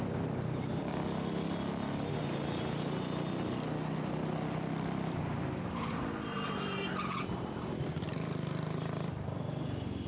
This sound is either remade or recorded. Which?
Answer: recorded